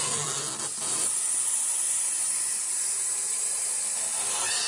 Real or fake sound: real